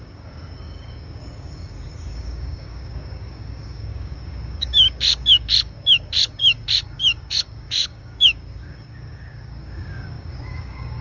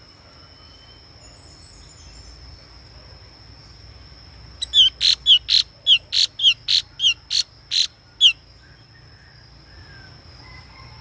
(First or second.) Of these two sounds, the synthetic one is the first